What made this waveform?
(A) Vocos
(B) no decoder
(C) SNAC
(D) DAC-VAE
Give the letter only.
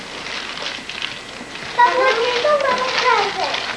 B